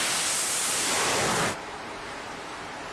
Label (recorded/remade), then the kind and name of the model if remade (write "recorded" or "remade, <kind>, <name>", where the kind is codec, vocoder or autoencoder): recorded